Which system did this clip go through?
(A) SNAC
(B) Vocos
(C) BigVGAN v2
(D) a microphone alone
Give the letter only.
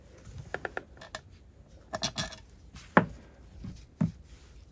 D